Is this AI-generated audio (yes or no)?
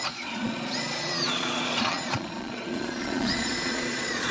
yes